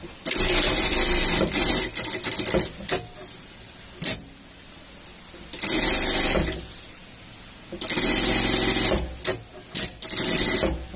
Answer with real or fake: real